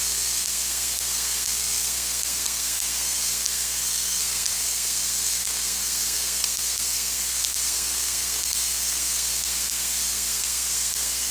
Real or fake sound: fake